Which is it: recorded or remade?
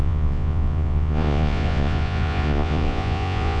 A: remade